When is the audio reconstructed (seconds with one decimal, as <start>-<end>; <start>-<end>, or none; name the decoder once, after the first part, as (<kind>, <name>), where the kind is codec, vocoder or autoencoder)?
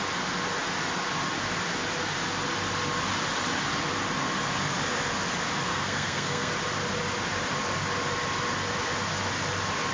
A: 5.7-6.5 (codec, SNAC)